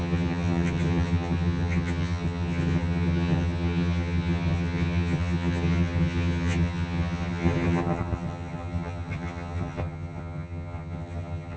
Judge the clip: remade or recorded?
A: remade